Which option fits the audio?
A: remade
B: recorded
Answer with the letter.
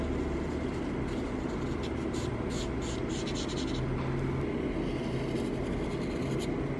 B